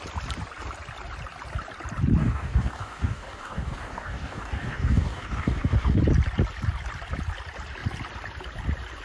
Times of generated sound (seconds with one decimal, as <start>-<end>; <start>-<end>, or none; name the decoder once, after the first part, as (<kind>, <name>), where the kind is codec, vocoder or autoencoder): 2.2-6.0 (codec, DAC)